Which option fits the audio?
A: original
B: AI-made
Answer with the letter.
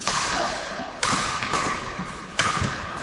B